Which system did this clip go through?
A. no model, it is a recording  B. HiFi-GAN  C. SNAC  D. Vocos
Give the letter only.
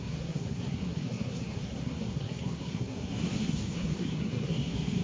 C